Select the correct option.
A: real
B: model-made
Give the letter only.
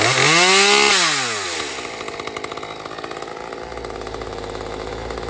A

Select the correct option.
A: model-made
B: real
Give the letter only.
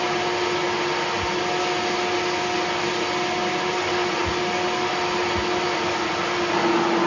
B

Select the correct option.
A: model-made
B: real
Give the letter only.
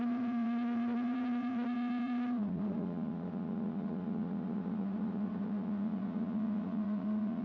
A